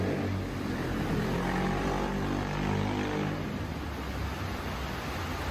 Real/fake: real